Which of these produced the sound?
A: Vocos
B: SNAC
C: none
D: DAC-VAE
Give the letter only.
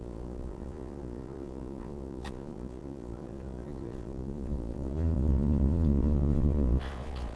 A